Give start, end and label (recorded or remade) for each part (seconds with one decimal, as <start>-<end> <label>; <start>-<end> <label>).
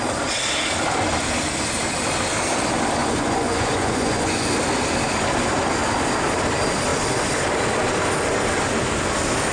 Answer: 0.0-3.0 recorded; 3.0-4.5 remade; 4.5-9.5 recorded